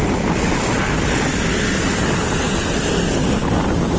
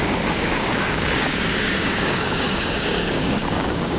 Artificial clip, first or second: second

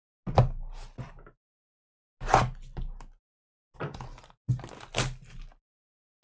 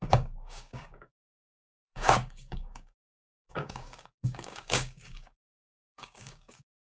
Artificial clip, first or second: second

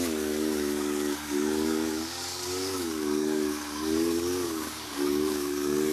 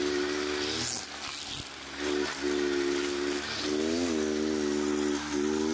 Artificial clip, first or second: first